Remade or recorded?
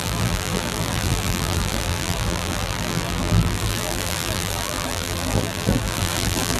remade